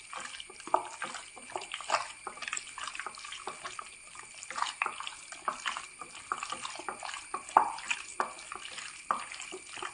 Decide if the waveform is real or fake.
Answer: real